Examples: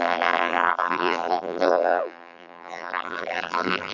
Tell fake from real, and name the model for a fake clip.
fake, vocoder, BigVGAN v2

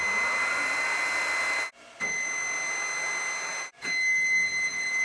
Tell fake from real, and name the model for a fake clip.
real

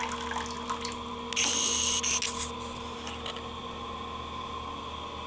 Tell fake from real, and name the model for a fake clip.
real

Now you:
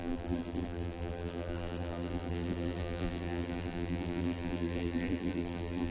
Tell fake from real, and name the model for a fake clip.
fake, vocoder, BigVGAN v2